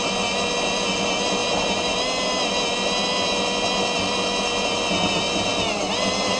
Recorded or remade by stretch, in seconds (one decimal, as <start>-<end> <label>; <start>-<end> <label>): 0.0-6.4 recorded